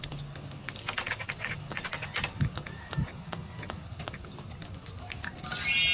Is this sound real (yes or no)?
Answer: yes